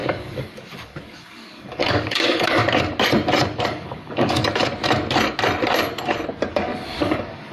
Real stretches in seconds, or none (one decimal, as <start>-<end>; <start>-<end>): 2.6-3.7; 4.4-6.5